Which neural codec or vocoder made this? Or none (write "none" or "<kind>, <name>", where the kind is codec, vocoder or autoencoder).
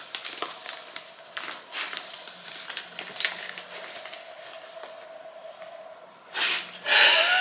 none